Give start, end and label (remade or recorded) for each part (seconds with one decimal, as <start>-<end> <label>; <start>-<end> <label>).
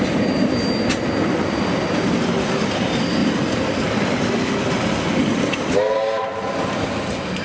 0.0-7.4 recorded